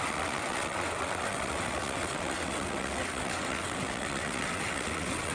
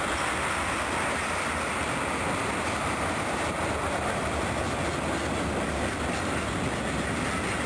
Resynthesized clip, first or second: first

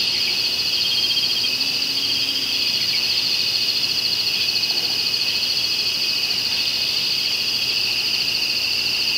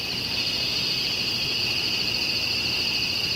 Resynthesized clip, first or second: second